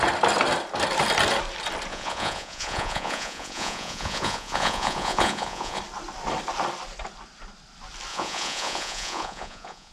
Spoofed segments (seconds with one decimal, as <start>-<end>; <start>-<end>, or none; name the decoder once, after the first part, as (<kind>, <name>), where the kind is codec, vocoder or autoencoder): 1.9-5.8 (vocoder, Vocos); 8.1-9.9